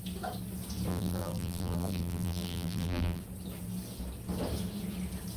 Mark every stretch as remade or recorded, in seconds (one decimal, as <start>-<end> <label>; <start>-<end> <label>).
0.0-0.9 recorded; 0.9-3.2 remade; 3.2-5.4 recorded